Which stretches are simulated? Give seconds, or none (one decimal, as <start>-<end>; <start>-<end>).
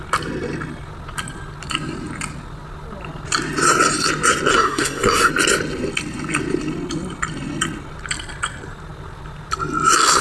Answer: 4.5-5.3